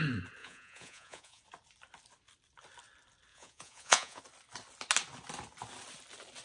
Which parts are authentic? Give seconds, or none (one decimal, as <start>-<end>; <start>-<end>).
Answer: 0.0-0.4; 1.4-3.3; 4.2-6.4